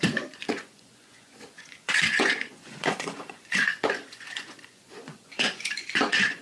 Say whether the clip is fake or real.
fake